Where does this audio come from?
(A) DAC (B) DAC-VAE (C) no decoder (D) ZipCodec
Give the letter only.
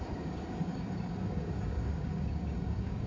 A